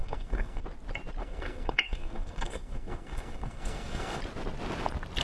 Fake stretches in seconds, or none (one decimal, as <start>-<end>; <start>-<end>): 0.0-0.6; 1.2-4.2